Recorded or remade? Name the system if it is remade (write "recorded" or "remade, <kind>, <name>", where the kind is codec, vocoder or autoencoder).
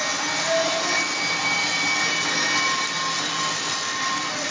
recorded